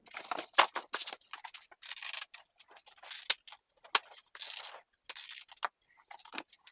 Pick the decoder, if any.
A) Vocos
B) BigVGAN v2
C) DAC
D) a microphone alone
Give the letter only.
D